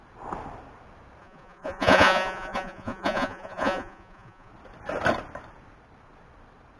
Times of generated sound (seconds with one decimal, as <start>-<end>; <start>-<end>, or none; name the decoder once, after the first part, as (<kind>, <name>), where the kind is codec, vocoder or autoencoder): 1.2-4.5 (vocoder, Vocos)